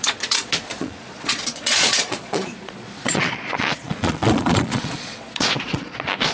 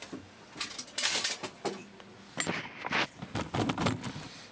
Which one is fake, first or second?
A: first